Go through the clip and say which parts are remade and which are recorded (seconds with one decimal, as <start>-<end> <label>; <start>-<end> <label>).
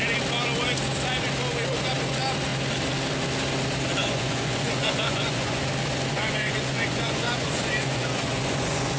0.0-4.0 recorded; 4.0-5.6 remade; 5.6-6.1 recorded; 6.1-9.0 remade